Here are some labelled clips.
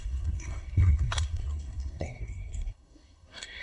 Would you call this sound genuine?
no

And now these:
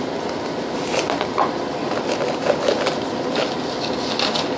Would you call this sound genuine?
yes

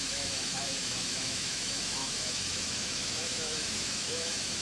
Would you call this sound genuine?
no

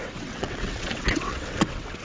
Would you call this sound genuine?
no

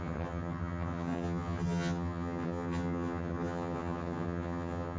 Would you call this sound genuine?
no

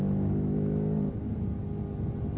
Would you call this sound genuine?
yes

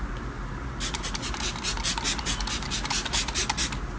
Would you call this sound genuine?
yes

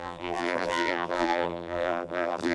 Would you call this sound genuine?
no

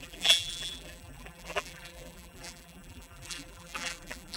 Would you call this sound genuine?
no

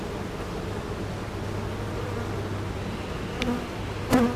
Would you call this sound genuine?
yes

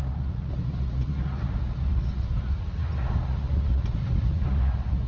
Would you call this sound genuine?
no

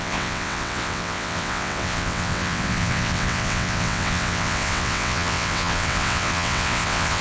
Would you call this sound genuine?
no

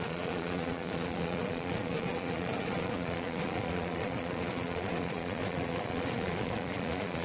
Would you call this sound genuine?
no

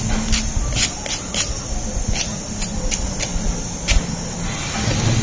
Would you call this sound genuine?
yes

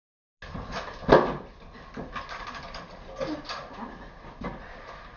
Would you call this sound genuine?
yes